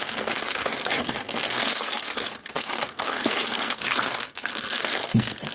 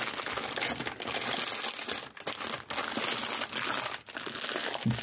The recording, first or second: second